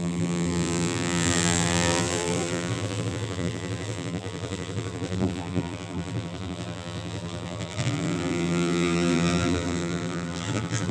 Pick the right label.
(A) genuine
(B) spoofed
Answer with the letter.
B